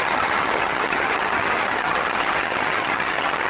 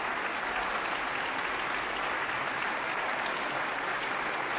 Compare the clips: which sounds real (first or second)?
second